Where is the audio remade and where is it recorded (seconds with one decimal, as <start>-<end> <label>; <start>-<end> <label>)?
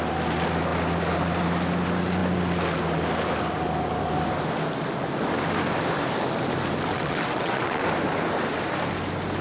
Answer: 0.0-6.9 recorded; 6.9-7.8 remade; 7.8-9.4 recorded